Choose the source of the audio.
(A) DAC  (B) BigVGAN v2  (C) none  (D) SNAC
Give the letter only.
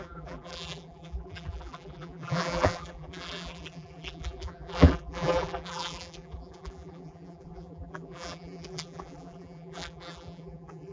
B